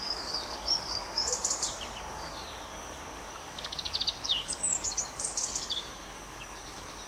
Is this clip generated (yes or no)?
yes